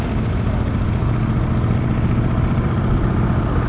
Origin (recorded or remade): recorded